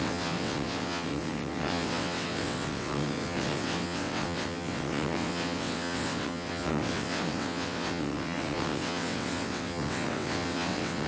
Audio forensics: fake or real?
fake